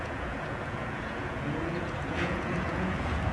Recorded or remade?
remade